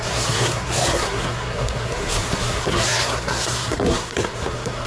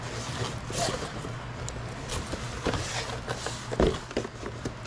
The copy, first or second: first